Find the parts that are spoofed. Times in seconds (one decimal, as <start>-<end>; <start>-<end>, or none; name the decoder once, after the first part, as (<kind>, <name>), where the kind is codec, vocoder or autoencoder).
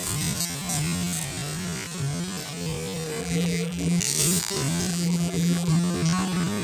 3.2-4.0 (vocoder, BigVGAN v2); 4.9-5.7